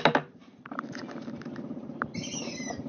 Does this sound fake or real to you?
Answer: fake